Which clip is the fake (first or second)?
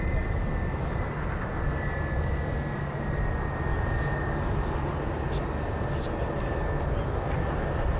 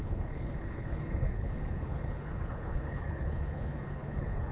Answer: second